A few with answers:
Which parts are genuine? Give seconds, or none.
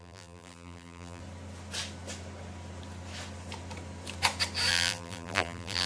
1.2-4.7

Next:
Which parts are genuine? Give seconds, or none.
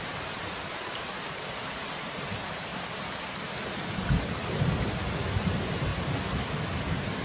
2.7-5.3; 5.9-6.8